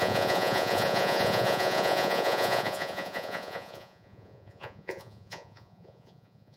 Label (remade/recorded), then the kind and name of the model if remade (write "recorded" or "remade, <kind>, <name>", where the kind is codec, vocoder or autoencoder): remade, vocoder, Vocos